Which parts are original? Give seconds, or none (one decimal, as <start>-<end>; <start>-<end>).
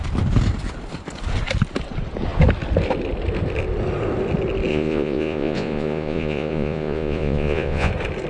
0.0-4.7; 7.9-8.3